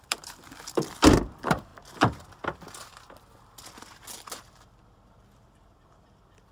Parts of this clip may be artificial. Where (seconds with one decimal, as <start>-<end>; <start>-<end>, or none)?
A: 0.0-1.7; 4.4-6.5